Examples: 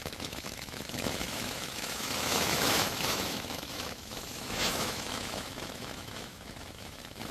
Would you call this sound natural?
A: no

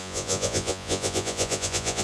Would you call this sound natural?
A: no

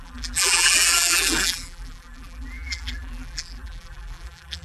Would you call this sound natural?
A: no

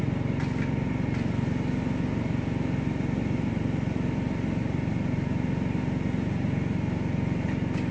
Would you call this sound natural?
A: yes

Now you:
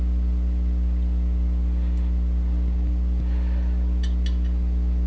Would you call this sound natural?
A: yes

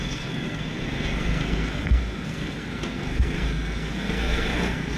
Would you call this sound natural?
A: no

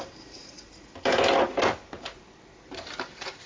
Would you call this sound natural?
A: yes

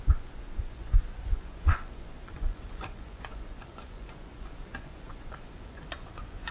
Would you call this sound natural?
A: no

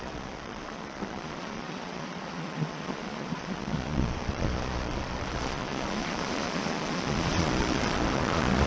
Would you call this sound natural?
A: no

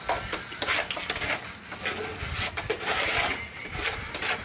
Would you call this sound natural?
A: yes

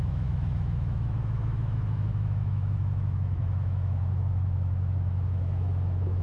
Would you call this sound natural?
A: no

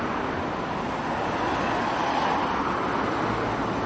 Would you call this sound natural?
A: yes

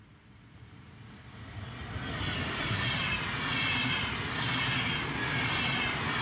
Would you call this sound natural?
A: yes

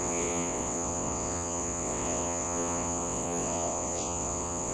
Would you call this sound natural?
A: no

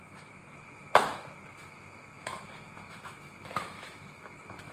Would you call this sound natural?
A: no